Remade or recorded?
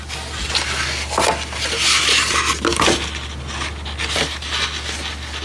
recorded